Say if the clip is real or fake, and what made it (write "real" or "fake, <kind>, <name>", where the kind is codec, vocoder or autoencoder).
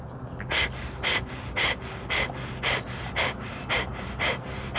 real